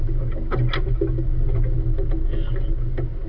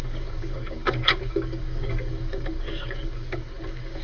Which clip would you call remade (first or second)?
second